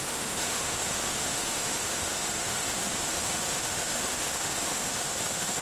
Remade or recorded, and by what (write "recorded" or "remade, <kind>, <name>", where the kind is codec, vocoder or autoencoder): remade, autoencoder, DAC-VAE